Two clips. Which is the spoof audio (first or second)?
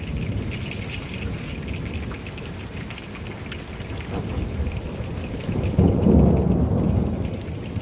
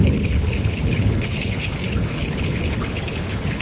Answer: second